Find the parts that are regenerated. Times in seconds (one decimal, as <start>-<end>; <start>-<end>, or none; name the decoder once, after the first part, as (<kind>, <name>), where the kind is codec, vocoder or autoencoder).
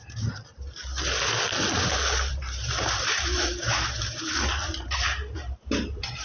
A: 0.0-0.8 (vocoder, BigVGAN v2); 2.3-6.2